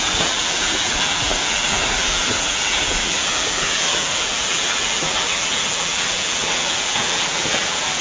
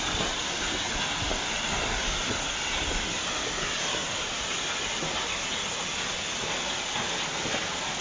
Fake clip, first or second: first